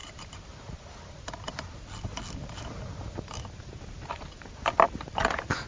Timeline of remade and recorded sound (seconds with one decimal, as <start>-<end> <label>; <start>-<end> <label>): 0.0-2.6 remade; 2.6-5.7 recorded